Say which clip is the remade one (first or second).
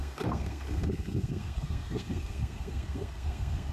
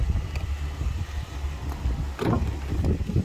first